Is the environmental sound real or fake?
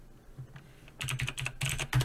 real